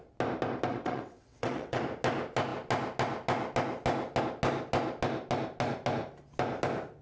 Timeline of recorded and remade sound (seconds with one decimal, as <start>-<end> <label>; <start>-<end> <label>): 0.0-0.7 recorded; 0.7-1.8 remade; 1.8-7.0 recorded